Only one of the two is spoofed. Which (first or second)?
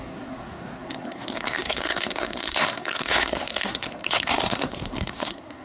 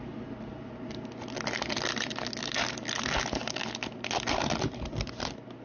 first